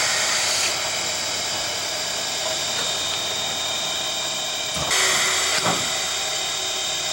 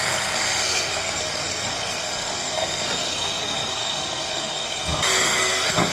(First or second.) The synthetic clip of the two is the second